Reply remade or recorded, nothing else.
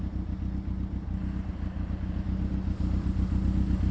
recorded